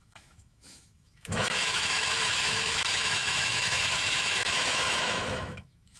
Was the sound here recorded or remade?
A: remade